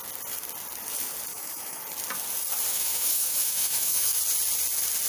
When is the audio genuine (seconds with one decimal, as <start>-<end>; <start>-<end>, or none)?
0.0-1.3; 1.8-2.7; 4.2-5.1